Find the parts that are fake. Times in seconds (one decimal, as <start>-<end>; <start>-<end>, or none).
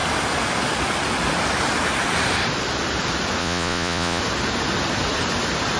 3.4-4.2